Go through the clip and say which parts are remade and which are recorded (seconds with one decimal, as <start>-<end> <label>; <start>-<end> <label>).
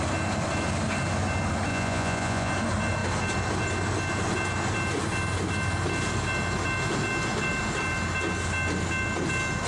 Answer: 0.0-1.7 recorded; 1.7-2.5 remade; 2.5-9.7 recorded